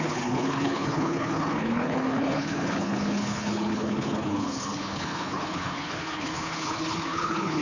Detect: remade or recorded remade